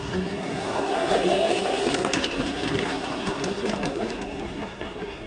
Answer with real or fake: fake